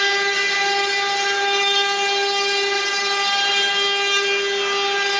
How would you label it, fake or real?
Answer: real